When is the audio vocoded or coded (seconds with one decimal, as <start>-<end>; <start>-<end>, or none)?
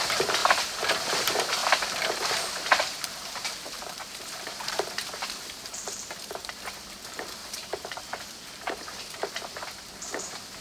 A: 0.4-1.2; 1.6-6.5; 7.4-9.3